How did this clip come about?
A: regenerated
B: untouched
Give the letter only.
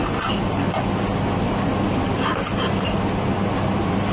B